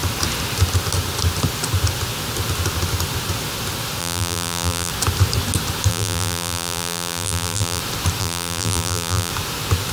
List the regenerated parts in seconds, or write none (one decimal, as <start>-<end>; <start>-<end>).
4.0-4.9; 5.9-7.8; 8.2-9.3